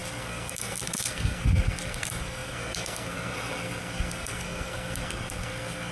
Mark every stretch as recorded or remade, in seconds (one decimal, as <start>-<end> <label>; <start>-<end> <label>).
0.0-5.9 remade